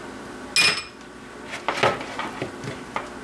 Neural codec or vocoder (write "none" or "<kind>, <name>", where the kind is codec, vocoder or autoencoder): none